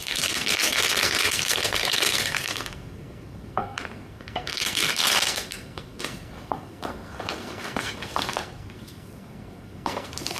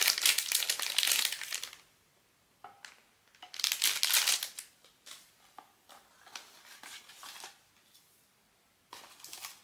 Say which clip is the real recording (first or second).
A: second